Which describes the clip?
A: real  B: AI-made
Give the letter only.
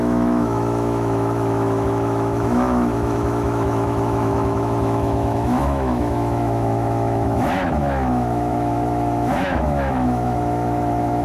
B